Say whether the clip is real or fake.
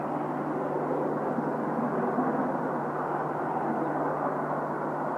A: real